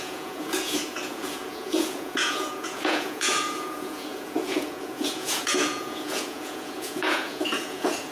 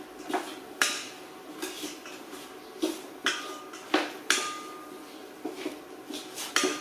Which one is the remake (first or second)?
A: first